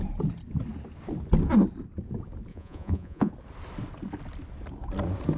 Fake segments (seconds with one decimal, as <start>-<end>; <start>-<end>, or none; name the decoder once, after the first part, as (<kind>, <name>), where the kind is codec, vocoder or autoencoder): 2.5-3.3 (vocoder, Vocos)